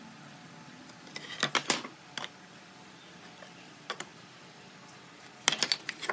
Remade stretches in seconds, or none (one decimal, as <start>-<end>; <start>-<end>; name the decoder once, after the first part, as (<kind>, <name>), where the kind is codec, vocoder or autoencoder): none